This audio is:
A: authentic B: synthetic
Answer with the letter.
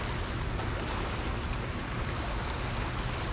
A